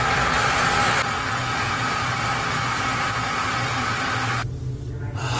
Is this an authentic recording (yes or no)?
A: yes